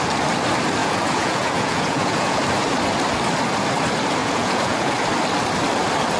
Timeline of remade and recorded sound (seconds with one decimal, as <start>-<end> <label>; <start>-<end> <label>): 0.0-0.8 recorded; 0.8-2.4 remade; 2.4-4.2 recorded; 4.2-4.9 remade; 4.9-6.2 recorded